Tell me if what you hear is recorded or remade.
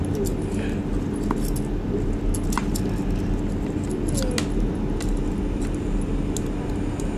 recorded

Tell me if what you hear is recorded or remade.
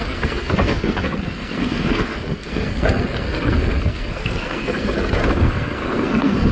remade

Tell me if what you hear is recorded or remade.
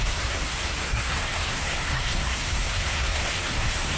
remade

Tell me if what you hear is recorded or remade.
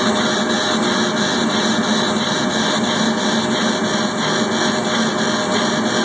recorded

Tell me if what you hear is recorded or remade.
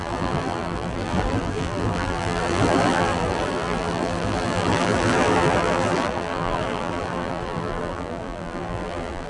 remade